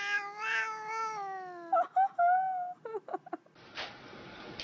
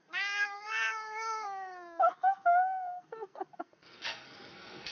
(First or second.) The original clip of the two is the first